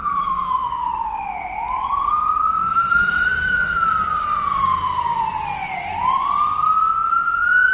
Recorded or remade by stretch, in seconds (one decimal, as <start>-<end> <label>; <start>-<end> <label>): 0.0-3.9 remade; 3.9-7.7 recorded